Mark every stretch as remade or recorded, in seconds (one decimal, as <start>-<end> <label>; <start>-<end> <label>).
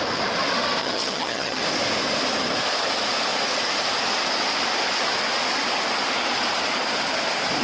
0.0-0.8 recorded; 0.8-1.6 remade; 1.6-7.6 recorded